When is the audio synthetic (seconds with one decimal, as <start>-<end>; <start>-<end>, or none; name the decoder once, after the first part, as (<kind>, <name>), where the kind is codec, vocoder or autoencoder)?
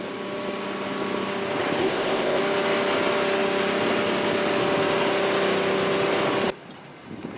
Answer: 1.8-2.4 (codec, ZipCodec)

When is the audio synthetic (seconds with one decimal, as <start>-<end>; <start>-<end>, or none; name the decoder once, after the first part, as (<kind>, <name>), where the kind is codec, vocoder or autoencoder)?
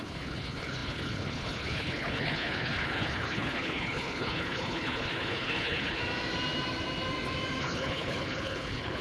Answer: 0.0-6.0 (codec, HILCodec); 7.6-9.0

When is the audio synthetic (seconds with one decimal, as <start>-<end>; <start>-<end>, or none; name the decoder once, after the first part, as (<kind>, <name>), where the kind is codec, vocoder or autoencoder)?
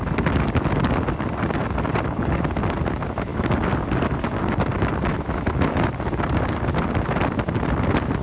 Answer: 5.1-5.9 (autoencoder, DAC-VAE)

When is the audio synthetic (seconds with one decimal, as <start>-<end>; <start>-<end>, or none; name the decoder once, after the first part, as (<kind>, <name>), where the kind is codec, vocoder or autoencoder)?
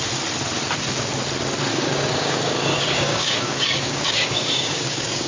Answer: 1.7-5.3 (codec, DAC)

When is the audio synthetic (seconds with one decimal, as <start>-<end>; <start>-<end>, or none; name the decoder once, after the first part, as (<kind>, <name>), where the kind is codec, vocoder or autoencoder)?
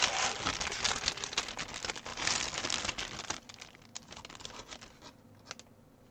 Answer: none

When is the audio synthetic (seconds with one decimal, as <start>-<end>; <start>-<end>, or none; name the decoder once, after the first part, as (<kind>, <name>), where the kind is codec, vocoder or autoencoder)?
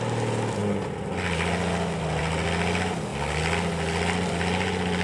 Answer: none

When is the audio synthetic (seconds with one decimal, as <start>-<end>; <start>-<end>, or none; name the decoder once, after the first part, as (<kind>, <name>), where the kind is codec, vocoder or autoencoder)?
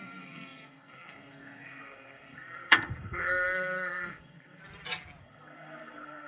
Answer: 0.0-4.6 (codec, SNAC); 5.2-6.3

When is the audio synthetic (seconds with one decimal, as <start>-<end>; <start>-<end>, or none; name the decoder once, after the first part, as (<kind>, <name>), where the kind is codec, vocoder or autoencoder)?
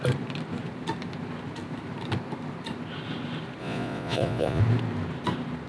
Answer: 3.6-4.6 (vocoder, Vocos)